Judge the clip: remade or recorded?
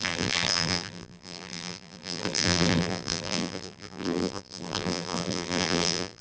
remade